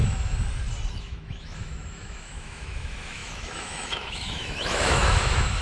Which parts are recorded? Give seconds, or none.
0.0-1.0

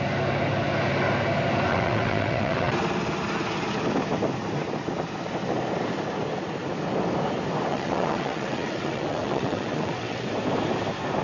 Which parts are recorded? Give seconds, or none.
0.0-1.7; 2.7-7.7; 10.3-11.2

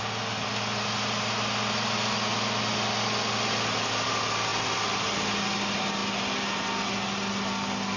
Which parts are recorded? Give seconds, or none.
0.0-8.0

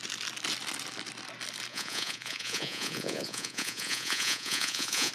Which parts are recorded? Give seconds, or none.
0.0-1.7

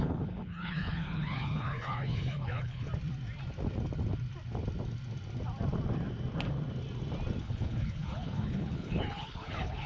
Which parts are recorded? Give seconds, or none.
2.9-7.4

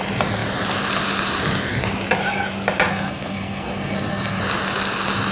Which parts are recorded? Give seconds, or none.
0.0-2.9; 4.4-5.3

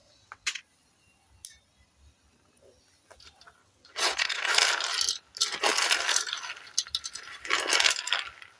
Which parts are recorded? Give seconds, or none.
0.6-3.6; 4.5-8.6

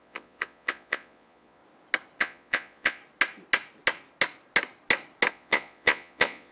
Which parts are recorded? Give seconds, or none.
1.6-2.2; 3.0-5.3